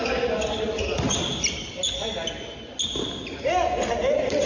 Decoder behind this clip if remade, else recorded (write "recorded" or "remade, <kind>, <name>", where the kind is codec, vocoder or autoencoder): recorded